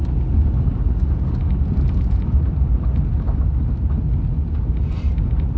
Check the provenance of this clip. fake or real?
real